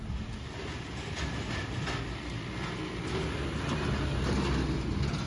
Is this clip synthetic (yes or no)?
no